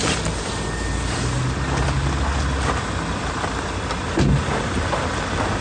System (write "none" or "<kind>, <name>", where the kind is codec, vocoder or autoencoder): none